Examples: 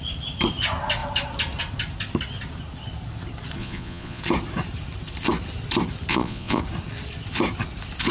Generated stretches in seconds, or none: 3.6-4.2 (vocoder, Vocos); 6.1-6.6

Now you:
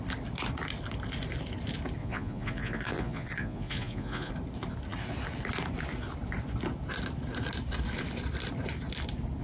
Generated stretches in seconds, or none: 2.0-4.3 (vocoder, Vocos)